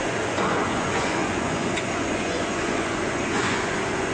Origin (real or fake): fake